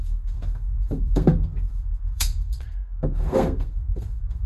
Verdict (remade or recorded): remade